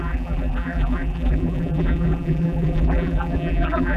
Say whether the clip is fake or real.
fake